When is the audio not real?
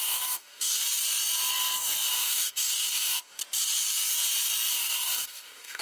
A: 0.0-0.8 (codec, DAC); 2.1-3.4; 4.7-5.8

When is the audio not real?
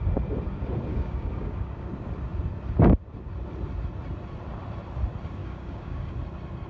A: 0.9-1.9 (codec, DAC); 5.4-6.1